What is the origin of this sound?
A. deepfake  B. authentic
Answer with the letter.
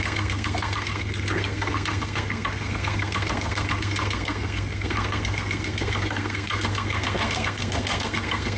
A